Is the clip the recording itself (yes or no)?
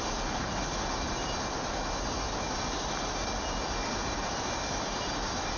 yes